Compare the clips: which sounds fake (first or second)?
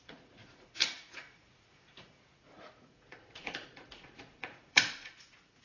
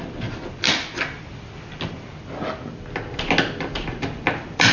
first